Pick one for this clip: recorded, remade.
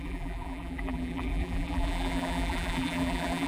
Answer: remade